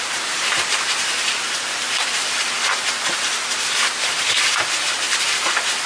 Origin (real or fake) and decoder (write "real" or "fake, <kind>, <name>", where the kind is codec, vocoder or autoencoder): fake, vocoder, BigVGAN v2